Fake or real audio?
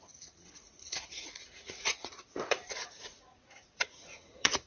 fake